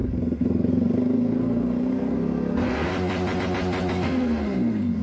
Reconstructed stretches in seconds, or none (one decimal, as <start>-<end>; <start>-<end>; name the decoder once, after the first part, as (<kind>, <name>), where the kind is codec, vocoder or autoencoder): 0.0-2.9 (codec, SNAC); 3.9-5.0